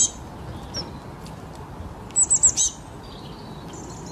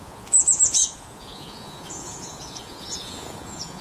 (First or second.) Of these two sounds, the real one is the first